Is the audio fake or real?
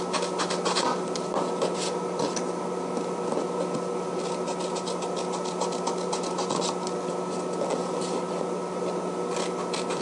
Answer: real